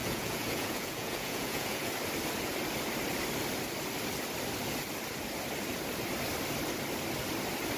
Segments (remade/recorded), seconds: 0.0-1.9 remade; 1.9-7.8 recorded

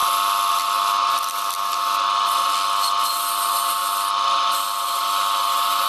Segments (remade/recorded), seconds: 0.0-5.9 recorded

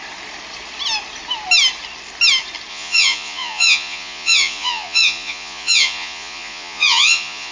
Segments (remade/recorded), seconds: 0.0-2.7 recorded; 2.7-7.5 remade

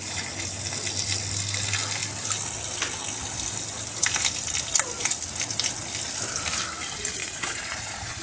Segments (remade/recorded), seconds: 0.0-7.2 recorded; 7.2-8.2 remade

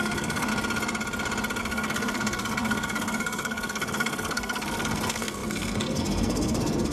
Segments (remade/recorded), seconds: 0.0-0.5 remade; 0.5-1.6 recorded; 1.6-6.9 remade

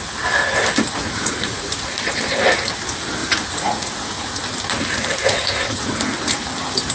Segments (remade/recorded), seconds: 0.0-1.0 recorded; 1.0-2.2 remade; 2.2-3.2 recorded; 3.2-4.4 remade; 4.4-5.2 recorded; 5.2-5.9 remade; 5.9-6.9 recorded